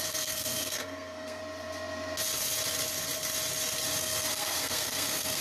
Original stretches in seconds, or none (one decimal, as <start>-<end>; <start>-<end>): 1.4-4.0